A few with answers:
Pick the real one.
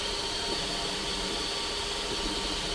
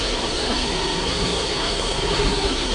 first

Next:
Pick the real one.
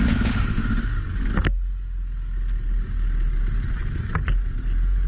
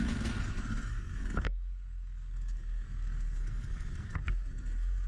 first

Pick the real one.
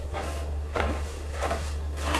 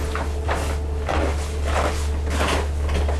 second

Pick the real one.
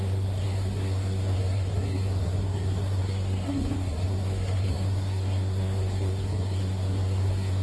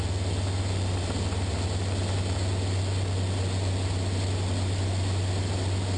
second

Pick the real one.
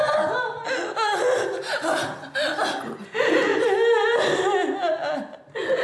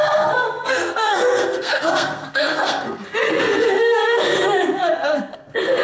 first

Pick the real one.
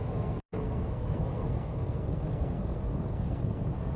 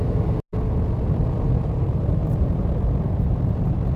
second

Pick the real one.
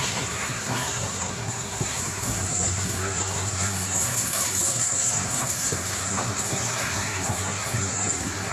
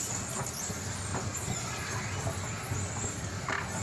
second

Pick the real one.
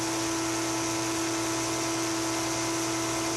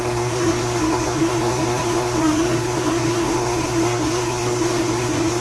first